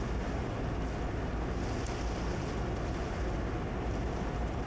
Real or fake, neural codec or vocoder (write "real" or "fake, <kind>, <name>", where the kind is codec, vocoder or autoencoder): real